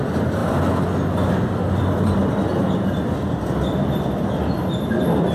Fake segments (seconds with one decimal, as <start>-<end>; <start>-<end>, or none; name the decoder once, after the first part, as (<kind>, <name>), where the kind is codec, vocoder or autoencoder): none

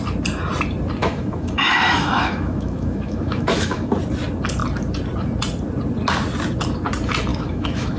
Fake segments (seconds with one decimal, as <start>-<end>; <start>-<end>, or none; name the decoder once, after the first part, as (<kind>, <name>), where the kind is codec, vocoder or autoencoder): 1.0-3.9 (autoencoder, DAC-VAE); 7.3-8.0